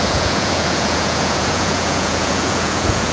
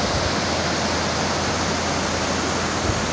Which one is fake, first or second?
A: first